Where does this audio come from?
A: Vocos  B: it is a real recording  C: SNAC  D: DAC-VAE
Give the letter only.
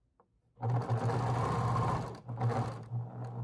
B